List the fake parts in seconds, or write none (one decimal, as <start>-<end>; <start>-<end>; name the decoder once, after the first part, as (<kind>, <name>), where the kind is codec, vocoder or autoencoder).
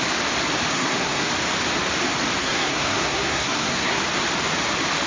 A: 0.7-1.3 (codec, SNAC); 2.4-4.0